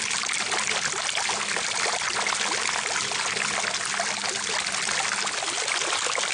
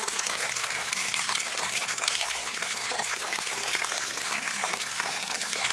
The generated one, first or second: second